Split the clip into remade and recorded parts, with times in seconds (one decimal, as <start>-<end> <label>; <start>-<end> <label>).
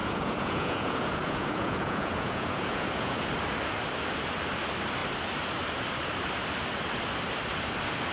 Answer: 0.0-3.3 remade; 3.3-8.1 recorded